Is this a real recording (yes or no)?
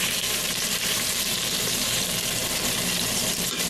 no